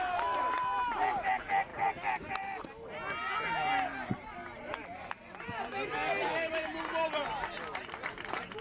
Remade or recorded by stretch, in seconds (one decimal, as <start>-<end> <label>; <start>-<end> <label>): 0.0-8.6 recorded